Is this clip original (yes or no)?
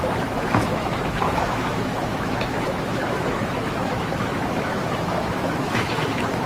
no